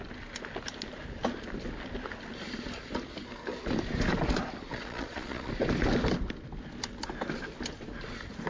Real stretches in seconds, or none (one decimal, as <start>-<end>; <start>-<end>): 0.0-4.7; 5.5-8.5